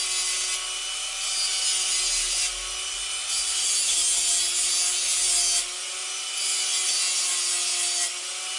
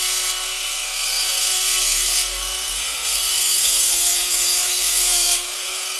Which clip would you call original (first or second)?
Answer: first